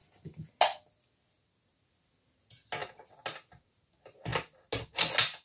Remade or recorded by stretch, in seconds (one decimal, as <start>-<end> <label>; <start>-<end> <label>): 0.0-5.4 recorded